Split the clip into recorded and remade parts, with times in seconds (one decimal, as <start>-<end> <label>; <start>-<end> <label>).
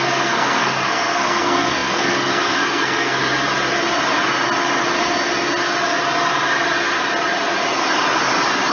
0.0-3.2 remade; 3.2-8.7 recorded